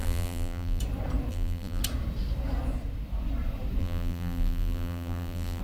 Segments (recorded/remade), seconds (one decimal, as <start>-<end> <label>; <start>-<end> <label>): 0.0-0.8 remade; 0.8-1.3 recorded; 1.3-1.8 remade; 1.8-3.8 recorded; 3.8-5.6 remade

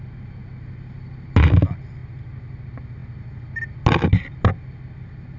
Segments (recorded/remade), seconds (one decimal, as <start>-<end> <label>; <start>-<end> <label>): 0.0-5.4 recorded

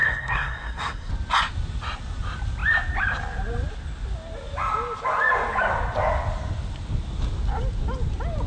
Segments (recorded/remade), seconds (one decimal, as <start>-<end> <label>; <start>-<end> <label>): 0.0-1.1 remade; 1.1-8.5 recorded

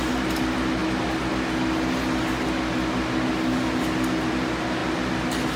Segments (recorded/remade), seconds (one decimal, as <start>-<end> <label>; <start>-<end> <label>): 0.0-5.6 recorded

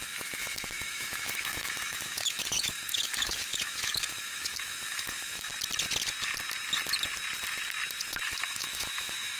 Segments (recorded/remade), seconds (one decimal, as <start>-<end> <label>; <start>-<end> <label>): 0.0-5.5 remade; 5.5-8.2 recorded; 8.2-9.4 remade

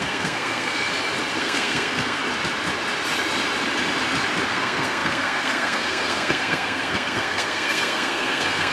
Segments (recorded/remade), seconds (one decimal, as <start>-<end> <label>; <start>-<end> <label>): 0.0-0.9 remade; 0.9-1.4 recorded; 1.4-2.2 remade; 2.2-4.5 recorded; 4.5-8.7 remade